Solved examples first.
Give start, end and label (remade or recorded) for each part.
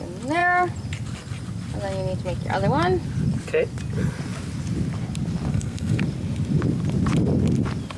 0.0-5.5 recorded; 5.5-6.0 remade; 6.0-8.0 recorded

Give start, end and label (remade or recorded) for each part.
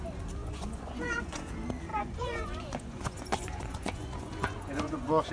0.0-0.4 recorded; 0.4-1.5 remade; 1.5-1.9 recorded; 1.9-5.3 remade